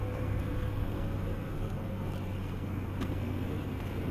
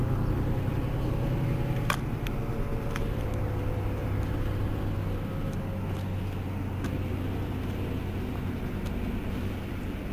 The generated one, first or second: first